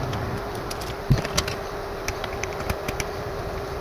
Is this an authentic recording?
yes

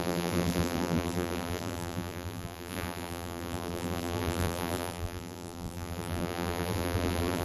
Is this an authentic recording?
no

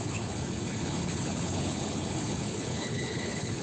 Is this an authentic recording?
no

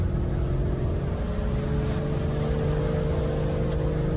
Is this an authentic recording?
yes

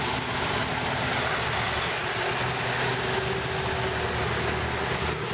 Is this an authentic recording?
yes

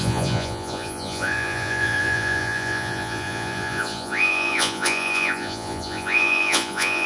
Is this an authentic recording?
no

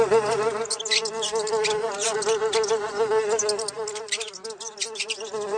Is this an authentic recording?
yes